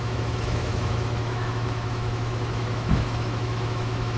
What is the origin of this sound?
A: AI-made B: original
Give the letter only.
A